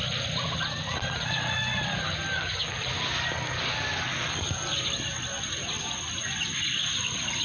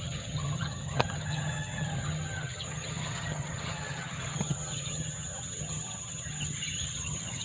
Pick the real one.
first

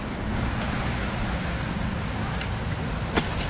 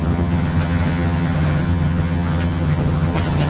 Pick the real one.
first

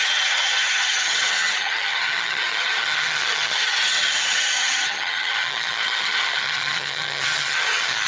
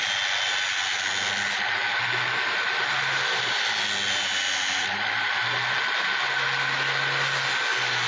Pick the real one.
second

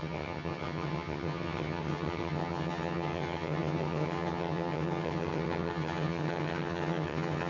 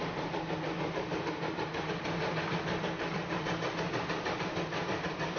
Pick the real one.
second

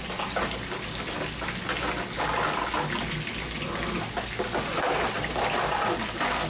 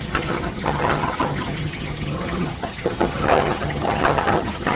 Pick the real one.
first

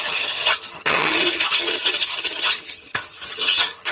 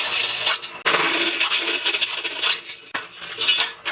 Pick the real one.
second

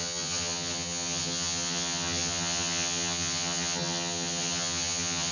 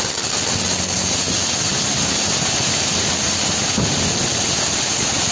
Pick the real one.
second